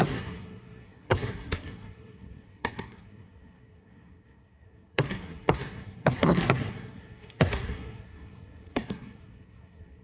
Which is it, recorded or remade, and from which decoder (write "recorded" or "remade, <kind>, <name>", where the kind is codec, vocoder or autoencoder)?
remade, codec, SNAC